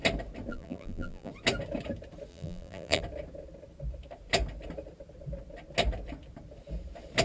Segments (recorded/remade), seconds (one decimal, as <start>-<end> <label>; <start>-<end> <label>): 0.0-0.5 recorded; 0.5-1.3 remade; 1.3-2.3 recorded; 2.3-3.0 remade; 3.0-7.2 recorded